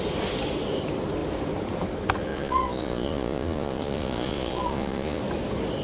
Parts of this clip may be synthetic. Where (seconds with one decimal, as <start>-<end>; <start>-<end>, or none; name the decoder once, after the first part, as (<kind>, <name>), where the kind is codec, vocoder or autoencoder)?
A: 2.3-5.2 (vocoder, Vocos)